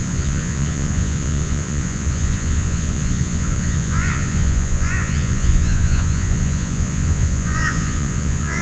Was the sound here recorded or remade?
remade